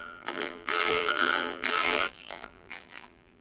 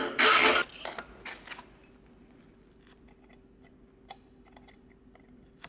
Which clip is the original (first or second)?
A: second